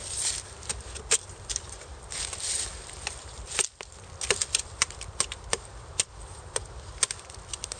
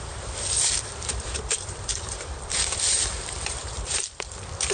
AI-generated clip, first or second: second